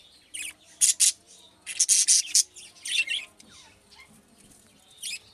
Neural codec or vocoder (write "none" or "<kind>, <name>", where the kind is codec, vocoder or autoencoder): none